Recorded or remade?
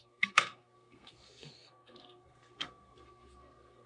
remade